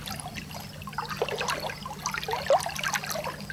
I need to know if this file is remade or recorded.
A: recorded